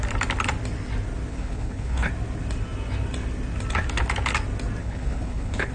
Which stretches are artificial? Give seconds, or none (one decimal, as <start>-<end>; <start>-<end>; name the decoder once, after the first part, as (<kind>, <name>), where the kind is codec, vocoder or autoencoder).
1.3-2.1 (codec, HILCodec); 4.8-5.7